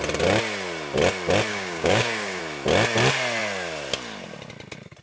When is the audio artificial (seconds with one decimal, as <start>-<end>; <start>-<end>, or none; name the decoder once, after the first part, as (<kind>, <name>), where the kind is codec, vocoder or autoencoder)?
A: 1.5-2.4 (codec, DAC)